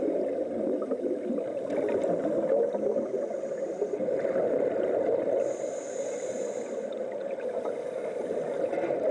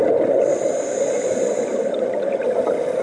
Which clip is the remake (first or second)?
second